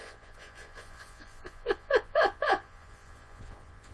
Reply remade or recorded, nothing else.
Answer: remade